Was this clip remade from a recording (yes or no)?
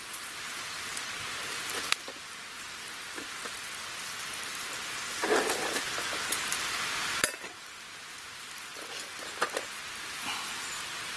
no